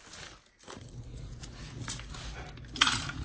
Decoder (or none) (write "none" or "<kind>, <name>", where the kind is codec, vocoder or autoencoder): none